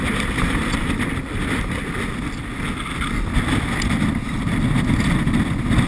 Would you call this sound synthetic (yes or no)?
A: no